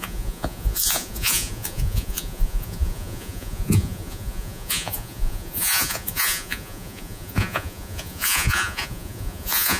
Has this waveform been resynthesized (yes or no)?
yes